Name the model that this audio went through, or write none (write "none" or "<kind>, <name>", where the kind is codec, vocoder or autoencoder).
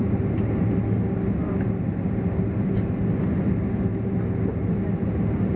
none